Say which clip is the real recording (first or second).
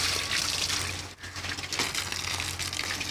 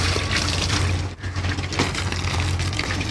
first